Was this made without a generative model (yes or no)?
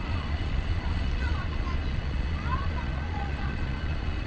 no